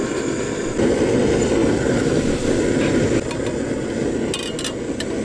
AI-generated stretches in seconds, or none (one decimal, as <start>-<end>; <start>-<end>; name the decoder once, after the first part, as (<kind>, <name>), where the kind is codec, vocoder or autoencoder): none